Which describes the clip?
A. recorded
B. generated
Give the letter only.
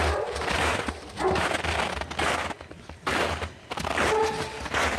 A